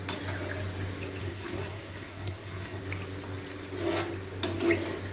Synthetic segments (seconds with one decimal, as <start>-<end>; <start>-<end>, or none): 1.2-2.8